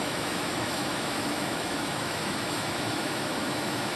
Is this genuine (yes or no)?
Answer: no